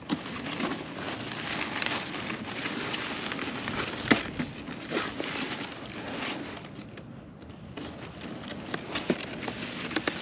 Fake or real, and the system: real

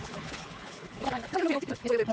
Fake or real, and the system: fake, codec, HILCodec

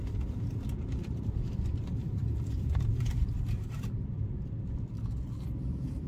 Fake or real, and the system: fake, vocoder, BigVGAN v2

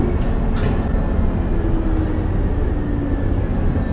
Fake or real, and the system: real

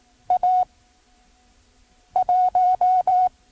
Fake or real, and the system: fake, vocoder, BigVGAN v2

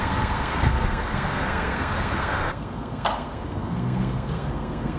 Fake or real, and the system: fake, codec, SNAC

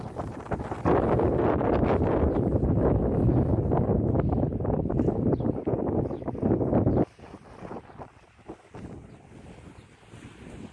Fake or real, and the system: real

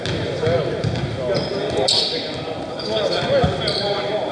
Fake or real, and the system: real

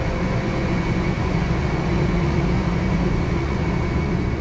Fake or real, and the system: fake, vocoder, Vocos